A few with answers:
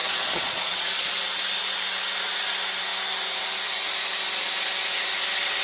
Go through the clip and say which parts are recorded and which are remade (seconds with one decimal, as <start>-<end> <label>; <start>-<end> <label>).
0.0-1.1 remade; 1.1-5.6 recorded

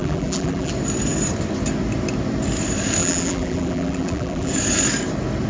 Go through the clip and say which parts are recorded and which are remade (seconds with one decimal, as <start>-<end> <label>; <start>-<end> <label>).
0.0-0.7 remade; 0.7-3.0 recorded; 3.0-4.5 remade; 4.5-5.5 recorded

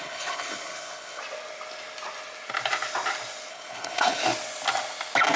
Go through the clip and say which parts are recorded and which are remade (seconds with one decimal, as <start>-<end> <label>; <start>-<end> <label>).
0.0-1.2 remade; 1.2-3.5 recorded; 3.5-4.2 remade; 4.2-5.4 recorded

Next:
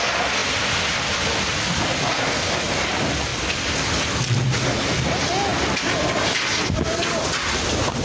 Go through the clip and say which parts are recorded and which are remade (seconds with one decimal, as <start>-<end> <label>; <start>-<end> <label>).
0.0-8.0 recorded

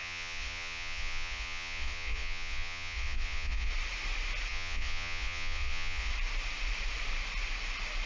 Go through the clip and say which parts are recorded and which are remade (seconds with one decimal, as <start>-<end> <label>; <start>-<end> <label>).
0.0-3.7 remade; 3.7-4.5 recorded; 4.5-6.1 remade; 6.1-8.1 recorded